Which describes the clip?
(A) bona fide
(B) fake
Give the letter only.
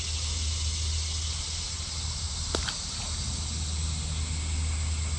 A